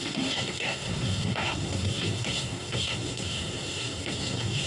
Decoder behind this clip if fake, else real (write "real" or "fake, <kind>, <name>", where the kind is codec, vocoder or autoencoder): fake, codec, SNAC